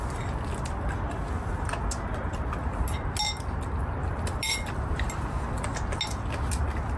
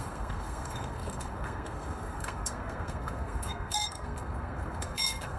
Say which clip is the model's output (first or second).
second